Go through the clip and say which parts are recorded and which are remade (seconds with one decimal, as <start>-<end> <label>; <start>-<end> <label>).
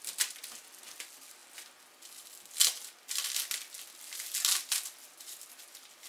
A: 0.0-6.1 recorded